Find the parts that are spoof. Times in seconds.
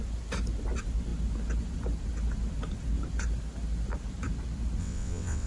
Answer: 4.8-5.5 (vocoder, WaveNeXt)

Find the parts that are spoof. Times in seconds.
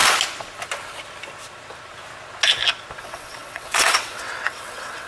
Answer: 3.0-5.1 (vocoder, WaveNeXt)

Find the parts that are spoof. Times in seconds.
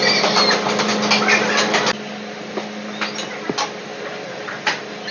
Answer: none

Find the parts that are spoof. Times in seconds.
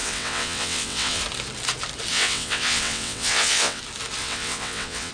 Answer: 0.0-1.2 (vocoder, WaveNeXt); 2.1-3.8; 4.2-5.1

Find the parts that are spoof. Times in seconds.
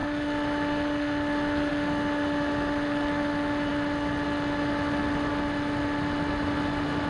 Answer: none